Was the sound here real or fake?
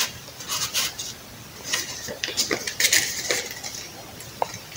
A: real